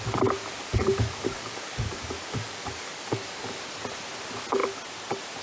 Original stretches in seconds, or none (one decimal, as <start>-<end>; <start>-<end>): 0.0-0.4; 3.6-5.4